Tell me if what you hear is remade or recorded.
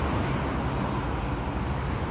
recorded